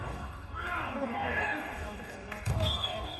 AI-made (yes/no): yes